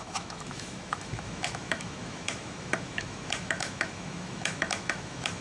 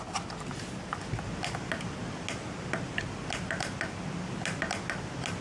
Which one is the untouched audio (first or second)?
second